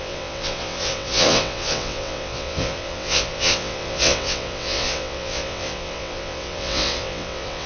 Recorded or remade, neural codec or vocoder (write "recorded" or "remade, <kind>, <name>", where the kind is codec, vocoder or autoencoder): remade, vocoder, WaveNeXt